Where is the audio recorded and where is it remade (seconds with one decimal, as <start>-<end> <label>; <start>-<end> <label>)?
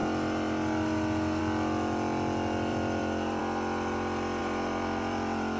0.0-2.7 recorded; 2.7-3.4 remade; 3.4-4.4 recorded; 4.4-5.6 remade